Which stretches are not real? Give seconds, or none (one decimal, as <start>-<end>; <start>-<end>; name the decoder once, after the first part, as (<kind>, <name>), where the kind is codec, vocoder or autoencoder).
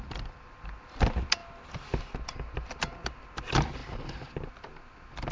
none